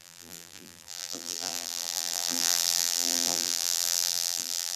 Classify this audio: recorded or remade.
remade